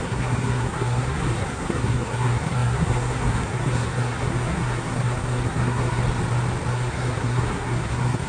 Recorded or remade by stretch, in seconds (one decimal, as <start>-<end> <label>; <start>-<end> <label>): 0.0-6.0 remade; 6.0-6.7 recorded; 6.7-8.3 remade

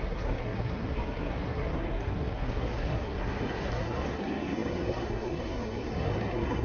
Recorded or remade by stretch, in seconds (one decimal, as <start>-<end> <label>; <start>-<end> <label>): 0.0-6.6 remade